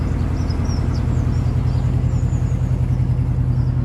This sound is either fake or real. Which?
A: real